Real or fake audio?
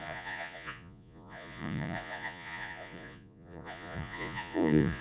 fake